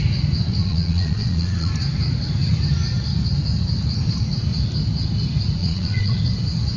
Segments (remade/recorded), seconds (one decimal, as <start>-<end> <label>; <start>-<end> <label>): 0.0-0.6 recorded; 0.6-1.7 remade; 1.7-5.6 recorded; 5.6-6.2 remade; 6.2-6.8 recorded